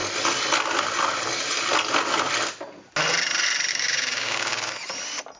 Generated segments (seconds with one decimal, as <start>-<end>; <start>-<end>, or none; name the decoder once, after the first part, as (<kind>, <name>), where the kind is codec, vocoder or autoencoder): 3.7-4.7 (codec, DAC)